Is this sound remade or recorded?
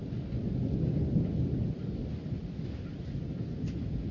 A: recorded